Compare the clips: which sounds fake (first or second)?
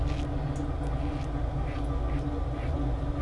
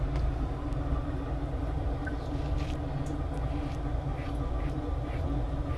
second